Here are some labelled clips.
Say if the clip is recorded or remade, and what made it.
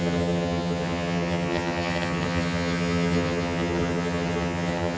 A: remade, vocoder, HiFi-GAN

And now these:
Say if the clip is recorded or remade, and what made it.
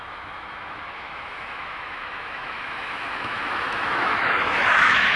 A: remade, autoencoder, DAC-VAE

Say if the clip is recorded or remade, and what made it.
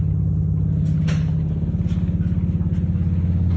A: recorded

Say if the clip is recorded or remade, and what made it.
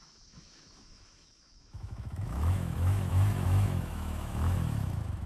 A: remade, autoencoder, DAC-VAE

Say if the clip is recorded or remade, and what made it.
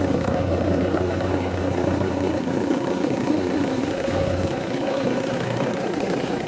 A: remade, codec, SNAC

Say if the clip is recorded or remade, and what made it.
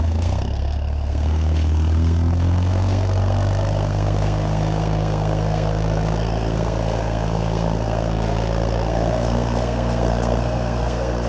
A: remade, codec, SNAC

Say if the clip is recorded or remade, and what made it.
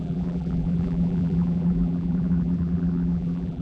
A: remade, vocoder, BigVGAN v2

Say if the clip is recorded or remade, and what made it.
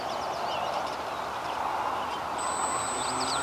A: recorded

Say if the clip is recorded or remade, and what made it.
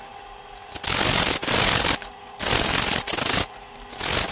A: recorded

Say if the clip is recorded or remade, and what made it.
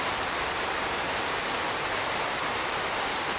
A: recorded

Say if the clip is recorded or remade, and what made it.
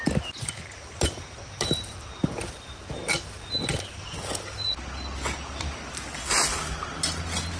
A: recorded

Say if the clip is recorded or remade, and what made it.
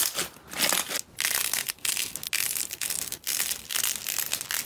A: recorded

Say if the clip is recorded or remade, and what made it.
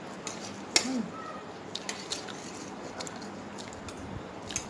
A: recorded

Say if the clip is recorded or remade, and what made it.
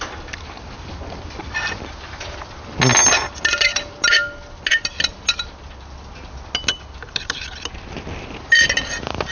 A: recorded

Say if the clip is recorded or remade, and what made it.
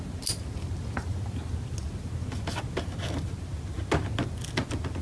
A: recorded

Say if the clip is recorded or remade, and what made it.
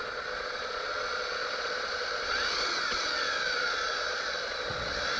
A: remade, vocoder, Vocos